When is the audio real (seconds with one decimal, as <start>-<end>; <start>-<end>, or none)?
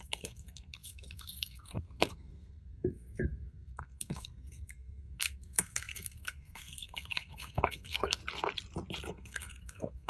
8.2-9.1